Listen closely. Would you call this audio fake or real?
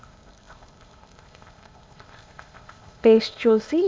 fake